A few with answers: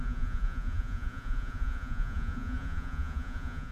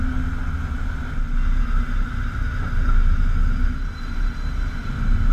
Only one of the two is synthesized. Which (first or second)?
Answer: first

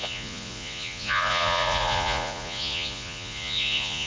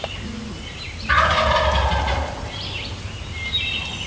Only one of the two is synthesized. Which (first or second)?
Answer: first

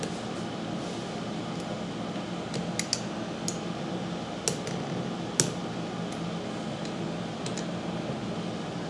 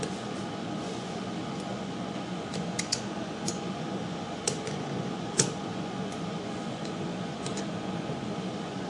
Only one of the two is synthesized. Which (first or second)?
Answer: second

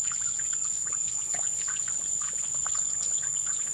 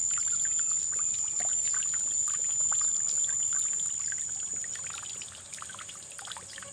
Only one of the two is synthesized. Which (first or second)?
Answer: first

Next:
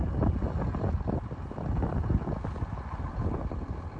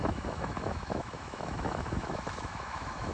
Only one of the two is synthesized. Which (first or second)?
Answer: second